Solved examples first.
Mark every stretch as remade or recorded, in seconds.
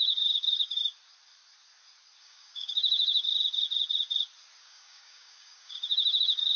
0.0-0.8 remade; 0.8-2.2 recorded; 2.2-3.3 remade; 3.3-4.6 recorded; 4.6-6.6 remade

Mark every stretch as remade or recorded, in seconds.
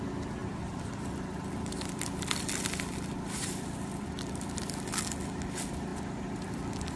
0.0-0.4 recorded; 0.4-4.6 remade; 4.6-5.9 recorded; 5.9-7.0 remade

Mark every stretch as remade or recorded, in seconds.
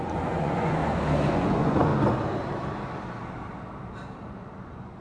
0.0-0.8 remade; 0.8-1.3 recorded; 1.3-1.9 remade; 1.9-4.6 recorded; 4.6-5.0 remade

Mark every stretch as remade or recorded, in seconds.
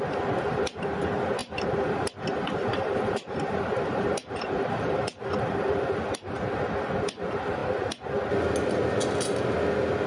0.0-1.4 recorded; 1.4-6.5 remade; 6.5-10.1 recorded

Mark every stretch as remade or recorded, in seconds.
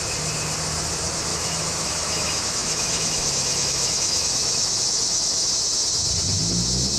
0.0-1.3 recorded; 1.3-5.5 remade; 5.5-7.0 recorded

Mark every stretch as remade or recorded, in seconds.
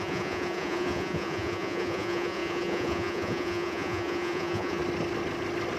0.0-4.8 remade; 4.8-5.8 recorded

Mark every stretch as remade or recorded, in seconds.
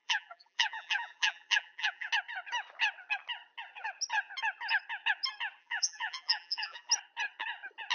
0.0-2.1 remade; 2.1-5.6 recorded; 5.6-6.9 remade; 6.9-7.9 recorded